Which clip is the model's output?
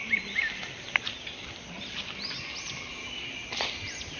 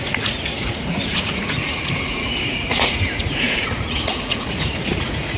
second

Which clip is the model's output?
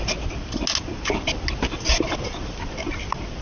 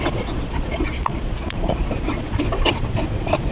second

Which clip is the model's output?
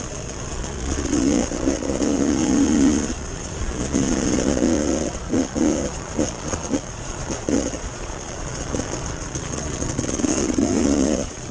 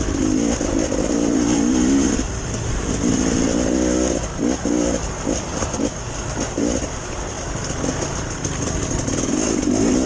first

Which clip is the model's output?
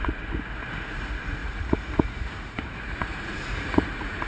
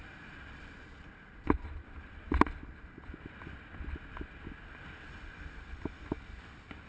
first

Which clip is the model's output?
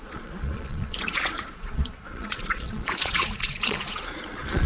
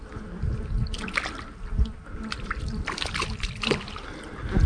first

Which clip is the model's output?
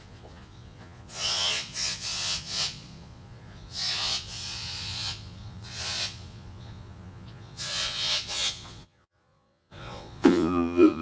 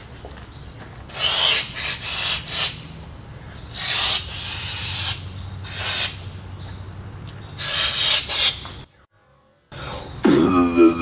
first